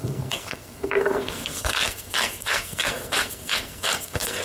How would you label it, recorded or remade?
remade